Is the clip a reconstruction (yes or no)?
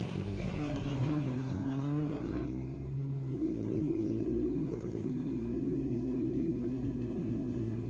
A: yes